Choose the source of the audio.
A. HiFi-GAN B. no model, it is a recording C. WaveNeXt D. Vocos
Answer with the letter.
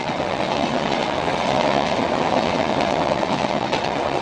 C